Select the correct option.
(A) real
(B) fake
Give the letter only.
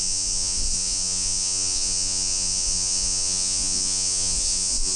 B